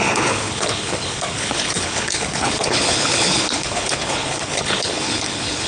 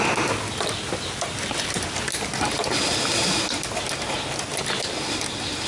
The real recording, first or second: second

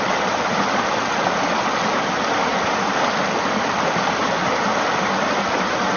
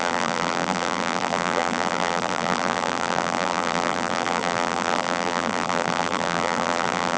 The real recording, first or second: first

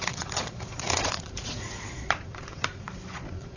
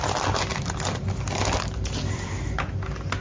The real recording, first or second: second